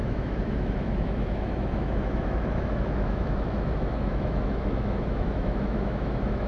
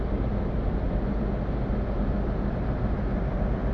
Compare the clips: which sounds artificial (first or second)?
first